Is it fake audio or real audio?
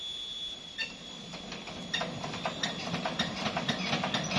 real